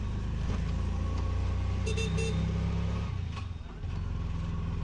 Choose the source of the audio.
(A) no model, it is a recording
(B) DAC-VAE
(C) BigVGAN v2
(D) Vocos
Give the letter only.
A